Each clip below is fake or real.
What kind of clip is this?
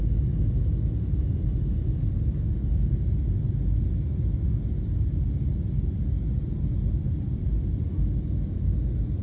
real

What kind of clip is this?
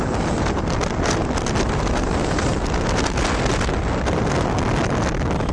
real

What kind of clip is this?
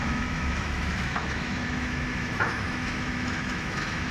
fake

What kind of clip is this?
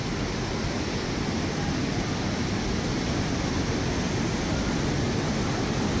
real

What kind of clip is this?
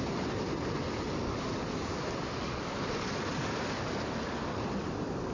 real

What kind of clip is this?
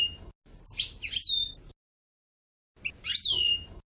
real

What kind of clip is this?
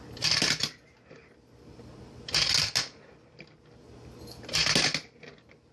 real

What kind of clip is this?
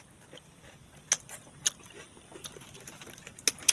real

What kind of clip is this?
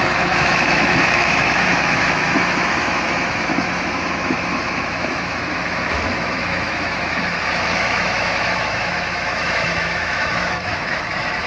fake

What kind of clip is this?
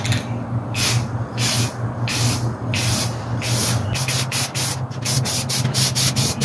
real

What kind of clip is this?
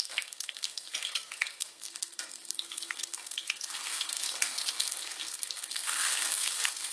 fake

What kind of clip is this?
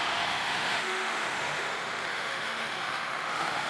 fake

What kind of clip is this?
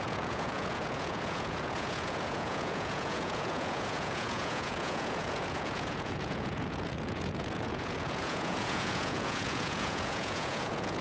fake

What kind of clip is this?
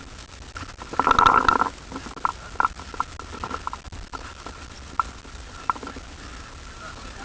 real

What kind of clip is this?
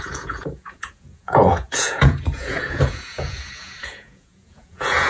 fake